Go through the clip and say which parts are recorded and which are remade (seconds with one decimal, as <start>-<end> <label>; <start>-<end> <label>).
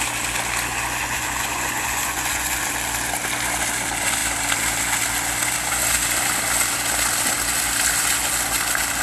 0.0-0.7 recorded; 0.7-2.6 remade; 2.6-9.0 recorded